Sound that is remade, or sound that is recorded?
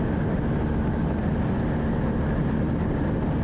recorded